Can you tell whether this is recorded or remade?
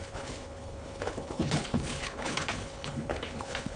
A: remade